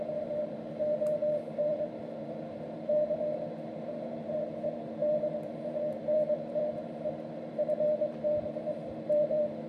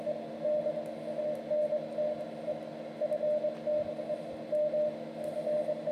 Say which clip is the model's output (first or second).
first